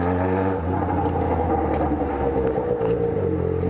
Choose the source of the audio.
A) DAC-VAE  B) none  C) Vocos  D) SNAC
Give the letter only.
B